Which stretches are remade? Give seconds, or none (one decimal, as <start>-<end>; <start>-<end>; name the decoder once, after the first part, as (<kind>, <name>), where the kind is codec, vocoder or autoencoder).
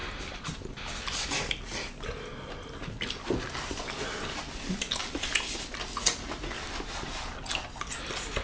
none